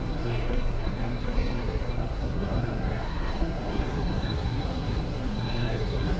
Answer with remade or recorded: remade